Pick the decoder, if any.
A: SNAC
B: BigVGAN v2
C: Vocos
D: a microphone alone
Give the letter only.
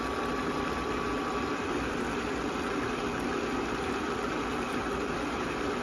D